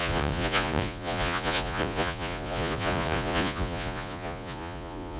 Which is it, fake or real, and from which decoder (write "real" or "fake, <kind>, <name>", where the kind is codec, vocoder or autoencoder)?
fake, vocoder, Vocos